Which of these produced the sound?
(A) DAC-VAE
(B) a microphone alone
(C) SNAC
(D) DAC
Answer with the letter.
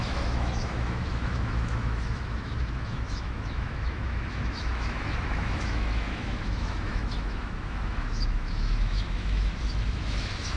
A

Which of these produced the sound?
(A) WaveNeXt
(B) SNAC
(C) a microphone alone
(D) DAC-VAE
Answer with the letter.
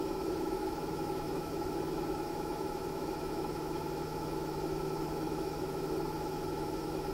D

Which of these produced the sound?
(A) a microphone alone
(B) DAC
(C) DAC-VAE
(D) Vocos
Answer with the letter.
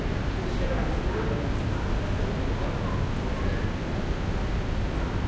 A